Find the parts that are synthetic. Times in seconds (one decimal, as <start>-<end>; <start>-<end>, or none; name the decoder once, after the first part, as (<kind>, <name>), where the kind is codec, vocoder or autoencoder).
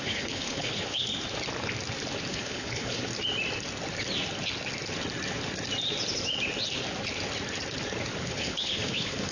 0.0-1.1 (codec, HILCodec); 2.3-3.1; 8.2-9.3